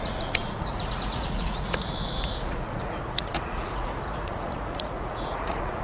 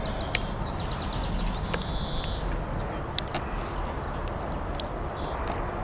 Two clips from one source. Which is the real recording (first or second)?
second